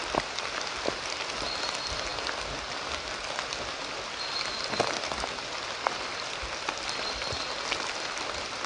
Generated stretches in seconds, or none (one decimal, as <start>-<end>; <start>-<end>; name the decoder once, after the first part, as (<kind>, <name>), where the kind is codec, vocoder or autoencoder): none